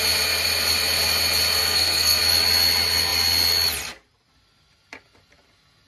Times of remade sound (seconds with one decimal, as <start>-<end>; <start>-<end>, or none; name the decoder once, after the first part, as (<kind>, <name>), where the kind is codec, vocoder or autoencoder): 1.6-2.2 (codec, SNAC)